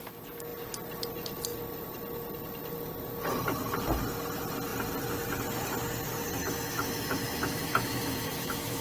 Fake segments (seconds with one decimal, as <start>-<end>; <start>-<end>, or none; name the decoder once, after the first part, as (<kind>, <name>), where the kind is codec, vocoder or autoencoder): 6.4-8.8 (autoencoder, DAC-VAE)